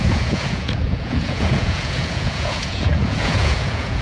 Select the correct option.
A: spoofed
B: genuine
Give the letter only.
A